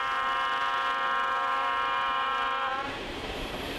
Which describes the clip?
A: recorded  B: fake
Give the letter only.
B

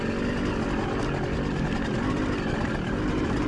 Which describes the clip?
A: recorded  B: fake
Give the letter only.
A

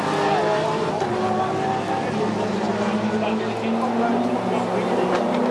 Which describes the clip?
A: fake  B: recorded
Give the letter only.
B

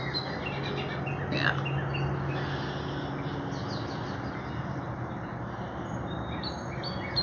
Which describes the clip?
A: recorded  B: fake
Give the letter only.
A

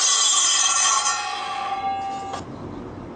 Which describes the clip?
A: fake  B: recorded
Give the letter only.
B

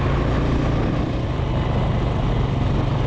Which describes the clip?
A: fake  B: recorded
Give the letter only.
B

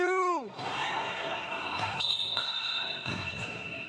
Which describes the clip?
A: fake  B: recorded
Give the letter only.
A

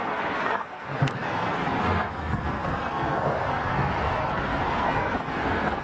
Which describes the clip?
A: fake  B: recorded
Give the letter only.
A